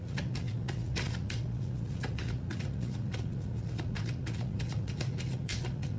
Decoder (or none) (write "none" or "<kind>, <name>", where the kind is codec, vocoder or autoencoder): vocoder, Vocos